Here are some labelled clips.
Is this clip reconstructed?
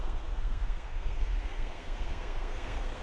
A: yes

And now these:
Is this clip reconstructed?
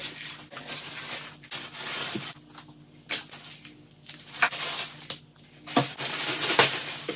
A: no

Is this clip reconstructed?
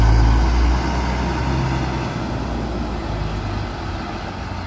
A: no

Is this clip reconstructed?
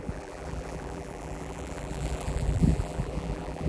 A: yes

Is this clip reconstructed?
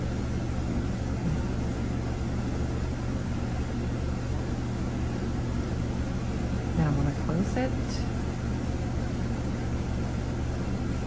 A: no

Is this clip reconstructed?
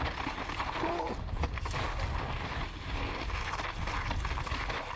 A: no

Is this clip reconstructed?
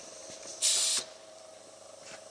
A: yes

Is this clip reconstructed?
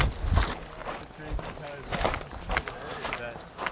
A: no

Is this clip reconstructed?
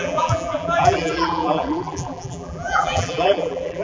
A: yes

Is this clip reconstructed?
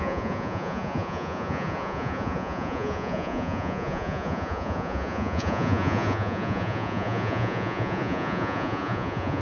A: yes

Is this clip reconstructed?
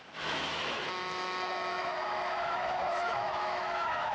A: yes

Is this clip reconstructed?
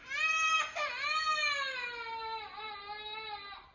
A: no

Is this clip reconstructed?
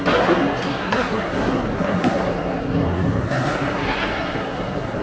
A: yes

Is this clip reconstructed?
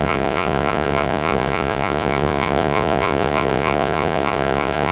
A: yes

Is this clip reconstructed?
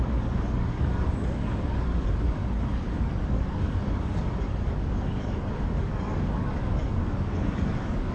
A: yes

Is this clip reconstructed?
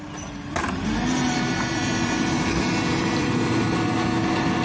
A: no